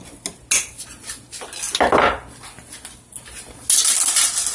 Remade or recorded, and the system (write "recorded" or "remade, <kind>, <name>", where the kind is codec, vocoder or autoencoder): recorded